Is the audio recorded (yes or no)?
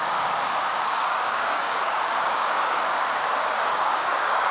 no